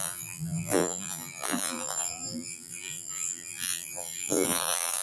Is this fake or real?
fake